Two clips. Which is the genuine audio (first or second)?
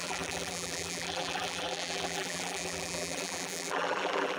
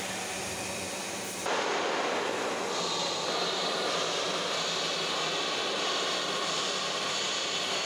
second